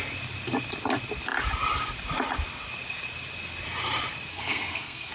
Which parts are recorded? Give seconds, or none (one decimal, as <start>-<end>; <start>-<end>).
0.0-4.3